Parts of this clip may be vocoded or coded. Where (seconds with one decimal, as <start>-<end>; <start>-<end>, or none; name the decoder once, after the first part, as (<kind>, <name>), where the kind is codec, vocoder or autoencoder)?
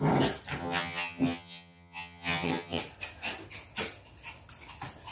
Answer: 0.6-2.8 (vocoder, HiFi-GAN)